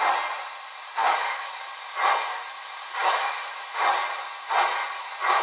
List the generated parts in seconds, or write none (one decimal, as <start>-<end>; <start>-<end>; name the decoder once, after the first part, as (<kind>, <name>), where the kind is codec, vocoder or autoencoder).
1.0-1.7 (autoencoder, DAC-VAE); 3.0-3.7